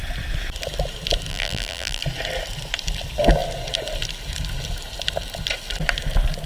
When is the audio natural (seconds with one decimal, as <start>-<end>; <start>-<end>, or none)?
0.0-1.3; 2.0-6.5